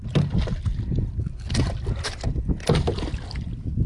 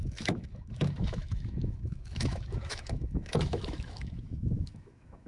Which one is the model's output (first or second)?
second